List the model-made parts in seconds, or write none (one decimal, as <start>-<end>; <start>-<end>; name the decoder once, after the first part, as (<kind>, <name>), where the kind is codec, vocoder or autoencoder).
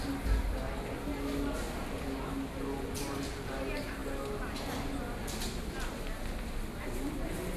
none